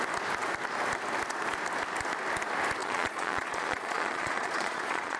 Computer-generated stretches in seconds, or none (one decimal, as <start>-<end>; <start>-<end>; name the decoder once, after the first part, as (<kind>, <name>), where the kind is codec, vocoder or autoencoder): 2.8-5.2 (vocoder, Vocos)